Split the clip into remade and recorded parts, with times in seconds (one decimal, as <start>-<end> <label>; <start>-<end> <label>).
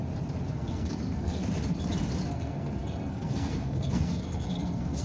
0.0-0.5 recorded; 0.5-1.4 remade; 1.4-2.3 recorded; 2.3-5.0 remade